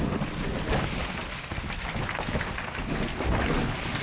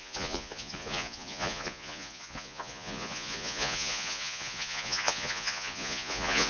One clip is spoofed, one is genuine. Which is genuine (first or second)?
first